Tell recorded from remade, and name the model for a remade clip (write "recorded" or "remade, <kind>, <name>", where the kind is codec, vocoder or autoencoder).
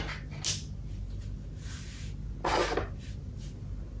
recorded